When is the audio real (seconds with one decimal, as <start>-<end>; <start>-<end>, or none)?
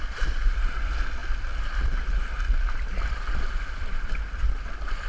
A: 0.0-5.1